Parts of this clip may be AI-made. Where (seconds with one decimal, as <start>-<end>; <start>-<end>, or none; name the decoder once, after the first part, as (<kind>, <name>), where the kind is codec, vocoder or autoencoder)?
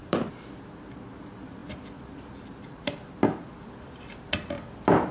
none